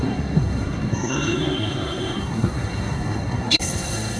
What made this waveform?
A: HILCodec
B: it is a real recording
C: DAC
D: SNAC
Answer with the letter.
D